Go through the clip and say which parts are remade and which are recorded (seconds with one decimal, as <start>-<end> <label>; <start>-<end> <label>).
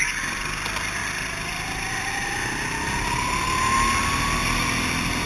0.0-5.3 recorded